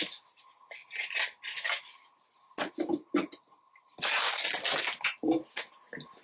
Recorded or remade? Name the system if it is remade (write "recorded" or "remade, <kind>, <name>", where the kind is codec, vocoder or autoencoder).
recorded